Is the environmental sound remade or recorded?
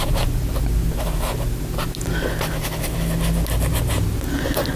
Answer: recorded